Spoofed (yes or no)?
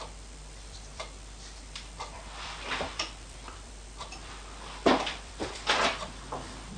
yes